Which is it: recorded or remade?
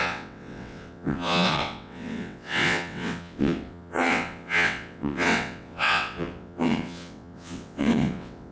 remade